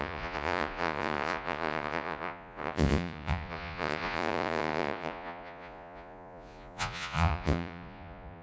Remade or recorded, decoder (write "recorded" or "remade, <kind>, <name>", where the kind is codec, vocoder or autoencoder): remade, vocoder, Vocos